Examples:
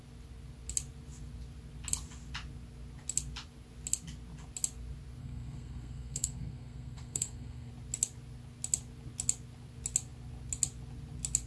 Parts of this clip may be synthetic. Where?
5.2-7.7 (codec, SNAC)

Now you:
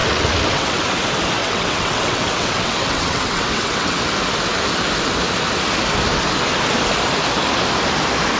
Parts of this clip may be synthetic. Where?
0.0-0.8 (vocoder, WaveNeXt); 1.4-4.0